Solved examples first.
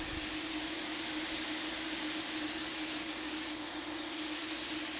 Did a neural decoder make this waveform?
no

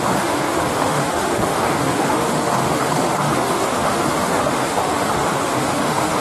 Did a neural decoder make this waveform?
yes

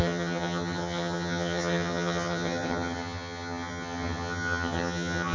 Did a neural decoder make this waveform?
yes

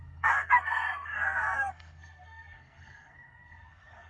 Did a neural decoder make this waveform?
yes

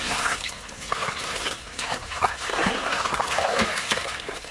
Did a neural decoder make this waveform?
yes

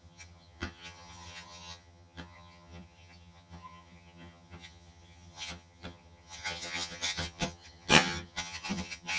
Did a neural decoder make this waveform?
yes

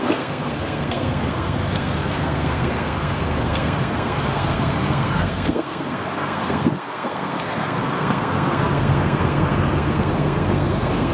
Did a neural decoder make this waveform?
yes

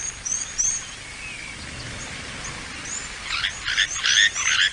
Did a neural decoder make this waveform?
no